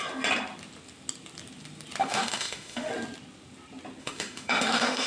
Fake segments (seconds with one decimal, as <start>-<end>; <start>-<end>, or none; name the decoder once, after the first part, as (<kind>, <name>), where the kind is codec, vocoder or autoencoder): 2.0-2.9 (autoencoder, DAC-VAE); 4.0-5.1